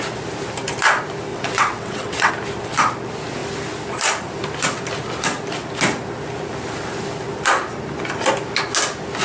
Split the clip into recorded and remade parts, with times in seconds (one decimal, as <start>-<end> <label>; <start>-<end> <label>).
0.0-1.3 recorded; 1.3-2.3 remade; 2.3-9.2 recorded

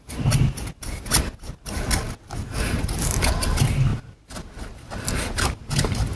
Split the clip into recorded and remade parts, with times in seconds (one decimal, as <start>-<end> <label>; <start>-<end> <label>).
0.0-6.2 recorded

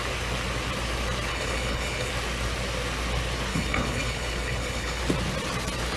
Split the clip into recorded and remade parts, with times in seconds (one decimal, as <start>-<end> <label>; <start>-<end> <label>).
0.0-1.3 recorded; 1.3-2.1 remade; 2.1-3.5 recorded; 3.5-5.0 remade; 5.0-6.0 recorded

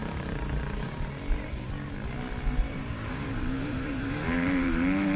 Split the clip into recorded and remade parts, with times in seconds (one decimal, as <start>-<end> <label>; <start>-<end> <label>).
0.0-0.8 remade; 0.8-2.7 recorded; 2.7-5.2 remade

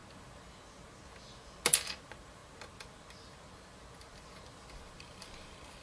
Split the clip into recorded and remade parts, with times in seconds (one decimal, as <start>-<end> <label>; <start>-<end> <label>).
0.0-5.8 recorded